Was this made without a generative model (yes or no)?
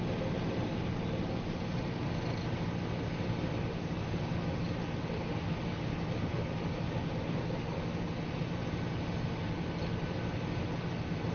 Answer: yes